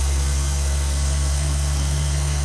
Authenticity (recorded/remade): remade